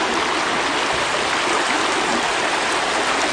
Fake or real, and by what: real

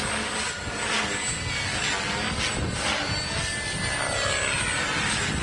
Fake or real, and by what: real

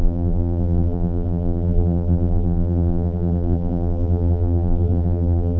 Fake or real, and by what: fake, vocoder, BigVGAN v2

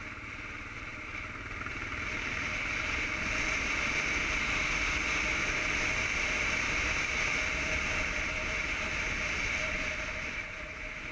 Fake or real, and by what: fake, vocoder, BigVGAN v2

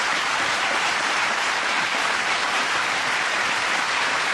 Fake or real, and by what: fake, vocoder, BigVGAN v2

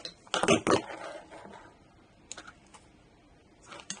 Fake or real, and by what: real